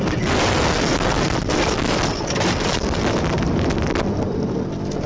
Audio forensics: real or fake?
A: real